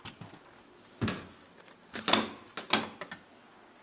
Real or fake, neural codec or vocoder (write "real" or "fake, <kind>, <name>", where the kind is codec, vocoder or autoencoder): real